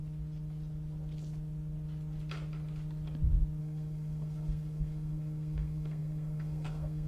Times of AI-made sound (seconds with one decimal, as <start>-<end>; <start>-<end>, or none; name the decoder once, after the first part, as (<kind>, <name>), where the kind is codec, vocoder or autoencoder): 3.6-7.1 (codec, SNAC)